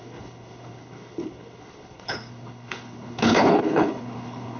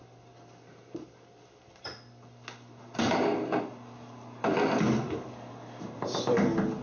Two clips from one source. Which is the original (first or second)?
second